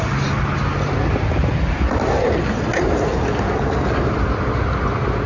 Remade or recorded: recorded